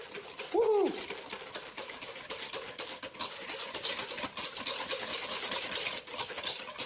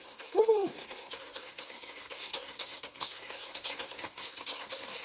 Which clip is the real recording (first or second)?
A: first